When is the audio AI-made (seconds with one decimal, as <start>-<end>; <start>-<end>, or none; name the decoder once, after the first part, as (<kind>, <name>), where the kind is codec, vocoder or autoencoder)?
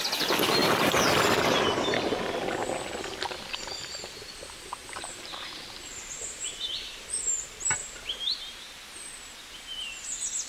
4.8-7.2 (vocoder, BigVGAN v2); 7.8-9.2